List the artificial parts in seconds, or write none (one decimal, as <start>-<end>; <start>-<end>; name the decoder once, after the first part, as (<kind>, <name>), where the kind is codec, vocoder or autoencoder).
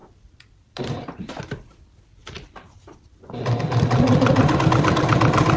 none